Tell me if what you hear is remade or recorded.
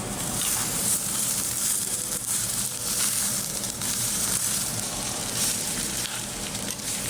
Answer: remade